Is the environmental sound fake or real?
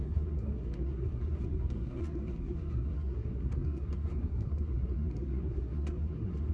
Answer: fake